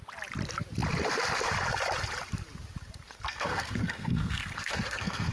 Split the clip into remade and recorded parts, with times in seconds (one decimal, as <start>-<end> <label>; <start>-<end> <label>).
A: 0.0-3.3 recorded; 3.3-5.3 remade